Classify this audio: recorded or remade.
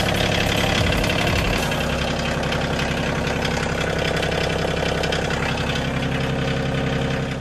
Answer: recorded